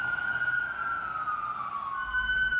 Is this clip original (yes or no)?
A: yes